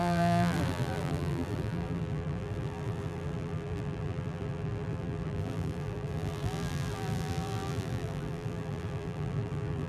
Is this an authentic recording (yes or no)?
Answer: no